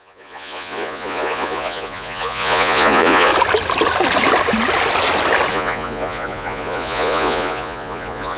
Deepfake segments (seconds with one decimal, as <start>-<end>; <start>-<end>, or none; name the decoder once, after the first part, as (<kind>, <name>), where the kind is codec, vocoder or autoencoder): 0.0-3.3 (vocoder, Vocos); 5.5-8.4